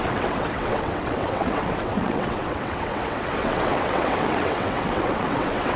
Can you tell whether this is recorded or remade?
remade